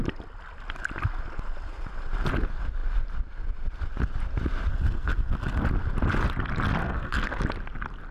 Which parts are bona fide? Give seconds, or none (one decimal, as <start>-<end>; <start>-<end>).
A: 0.0-4.7; 5.6-6.8; 7.4-8.1